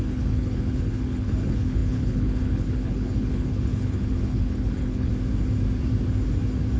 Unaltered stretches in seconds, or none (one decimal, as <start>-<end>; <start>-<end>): 5.1-6.8